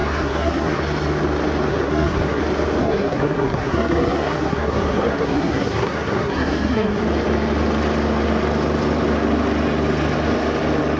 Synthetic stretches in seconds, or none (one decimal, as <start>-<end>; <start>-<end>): 0.0-0.8; 1.7-2.4; 2.8-7.0